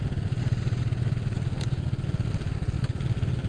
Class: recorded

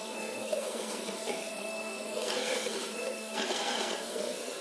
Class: remade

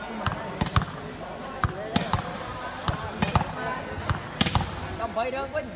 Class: recorded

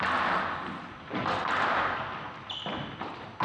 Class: recorded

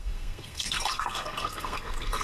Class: remade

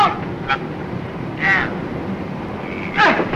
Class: recorded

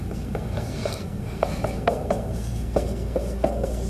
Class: remade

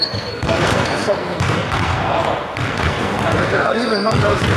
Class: remade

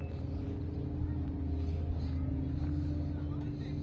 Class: recorded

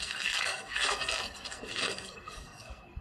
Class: remade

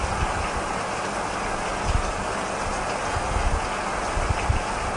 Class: recorded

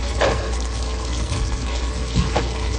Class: remade